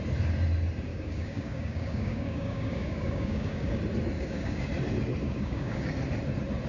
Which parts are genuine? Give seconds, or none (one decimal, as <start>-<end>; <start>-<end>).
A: 0.0-0.9; 3.8-4.2; 4.7-5.2; 5.9-6.7